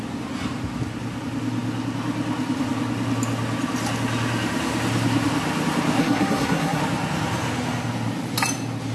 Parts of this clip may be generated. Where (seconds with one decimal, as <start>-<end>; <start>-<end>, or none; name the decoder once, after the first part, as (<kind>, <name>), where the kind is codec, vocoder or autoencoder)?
6.0-6.8 (codec, SNAC)